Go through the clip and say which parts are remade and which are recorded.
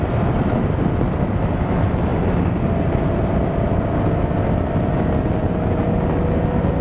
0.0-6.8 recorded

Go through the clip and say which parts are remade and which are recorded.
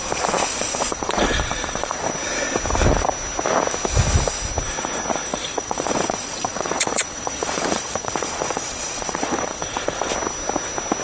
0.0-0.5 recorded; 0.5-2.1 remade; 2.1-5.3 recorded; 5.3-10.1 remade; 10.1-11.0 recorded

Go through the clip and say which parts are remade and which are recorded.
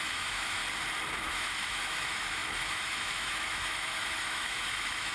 0.0-0.6 remade; 0.6-1.1 recorded; 1.1-5.1 remade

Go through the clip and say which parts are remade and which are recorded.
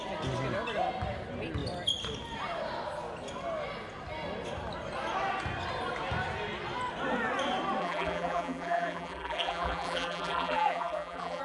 0.0-7.8 recorded; 7.8-11.4 remade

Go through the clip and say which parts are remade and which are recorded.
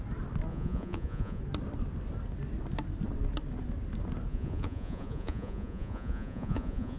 0.0-0.5 recorded; 0.5-1.4 remade; 1.4-4.3 recorded; 4.3-7.0 remade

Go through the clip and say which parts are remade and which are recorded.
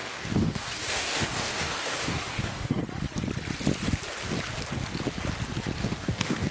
0.0-2.8 remade; 2.8-5.8 recorded; 5.8-6.5 remade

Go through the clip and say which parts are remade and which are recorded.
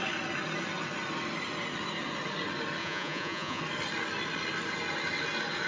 0.0-2.8 recorded; 2.8-3.6 remade; 3.6-5.7 recorded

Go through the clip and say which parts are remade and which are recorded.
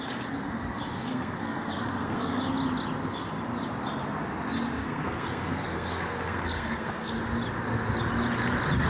0.0-1.1 recorded; 1.1-2.4 remade; 2.4-4.8 recorded; 4.8-7.1 remade; 7.1-8.9 recorded